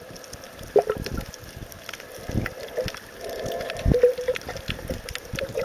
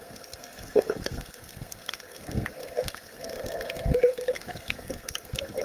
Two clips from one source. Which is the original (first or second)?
first